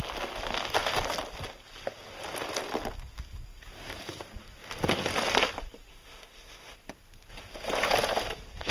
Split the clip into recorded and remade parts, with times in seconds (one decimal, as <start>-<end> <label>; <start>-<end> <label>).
0.0-5.9 recorded; 5.9-6.7 remade; 6.7-8.7 recorded